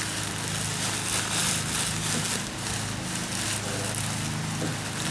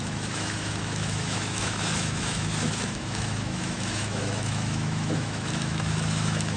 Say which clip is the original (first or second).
first